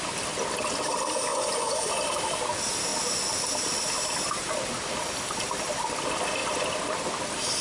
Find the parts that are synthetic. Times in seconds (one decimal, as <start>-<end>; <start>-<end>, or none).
1.3-1.9